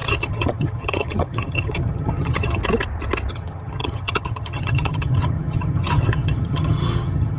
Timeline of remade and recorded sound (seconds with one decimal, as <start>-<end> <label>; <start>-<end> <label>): 0.0-2.6 remade; 2.6-3.3 recorded; 3.3-7.4 remade